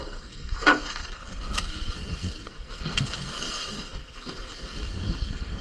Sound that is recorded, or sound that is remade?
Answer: remade